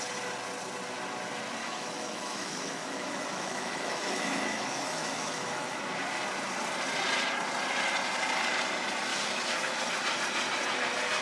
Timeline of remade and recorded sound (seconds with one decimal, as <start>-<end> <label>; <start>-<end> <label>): 0.0-1.6 recorded; 1.6-5.8 remade; 5.8-9.1 recorded; 9.1-9.8 remade; 9.8-11.2 recorded